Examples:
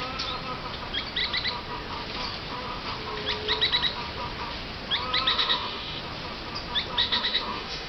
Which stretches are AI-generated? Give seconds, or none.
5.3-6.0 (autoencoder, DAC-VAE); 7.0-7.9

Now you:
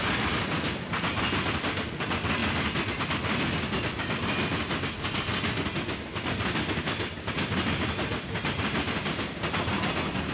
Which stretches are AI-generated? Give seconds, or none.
none

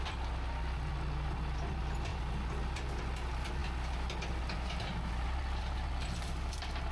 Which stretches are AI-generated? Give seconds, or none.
none